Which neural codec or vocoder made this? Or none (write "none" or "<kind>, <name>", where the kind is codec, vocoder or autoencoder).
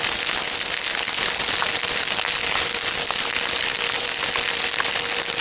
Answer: none